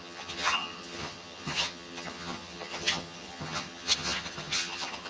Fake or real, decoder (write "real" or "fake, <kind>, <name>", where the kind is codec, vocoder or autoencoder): fake, vocoder, HiFi-GAN